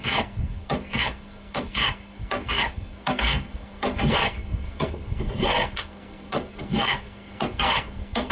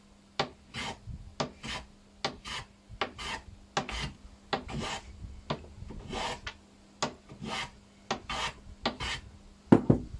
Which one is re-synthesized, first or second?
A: first